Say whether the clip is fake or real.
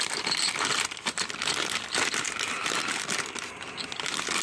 real